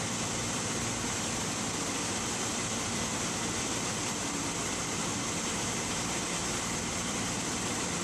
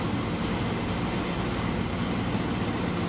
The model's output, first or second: first